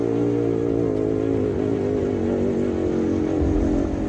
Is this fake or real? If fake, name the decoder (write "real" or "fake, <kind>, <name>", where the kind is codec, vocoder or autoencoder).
real